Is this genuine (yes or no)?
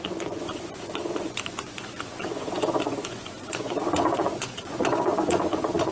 no